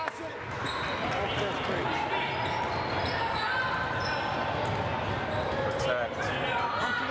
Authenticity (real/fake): real